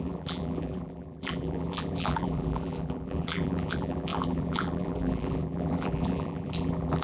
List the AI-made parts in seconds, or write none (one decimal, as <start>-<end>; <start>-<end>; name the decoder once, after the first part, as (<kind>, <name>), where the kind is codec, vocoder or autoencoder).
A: 0.0-7.0 (vocoder, BigVGAN v2)